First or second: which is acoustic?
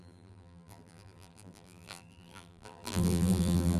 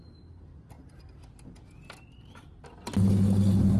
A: second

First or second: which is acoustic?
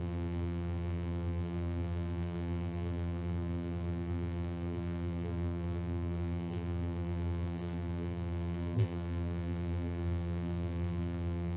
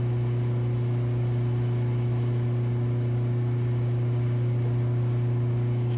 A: second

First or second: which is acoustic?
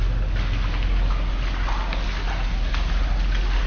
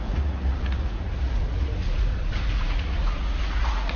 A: first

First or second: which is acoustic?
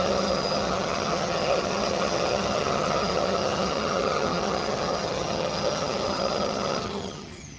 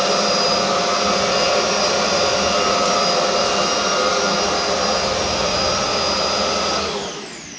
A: second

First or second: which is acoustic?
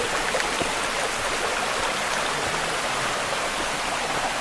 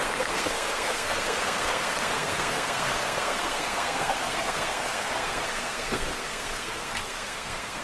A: first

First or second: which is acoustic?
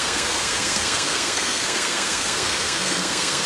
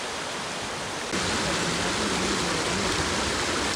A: second